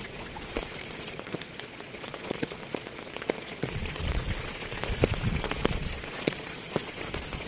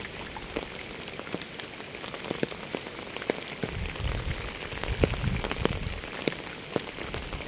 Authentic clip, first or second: second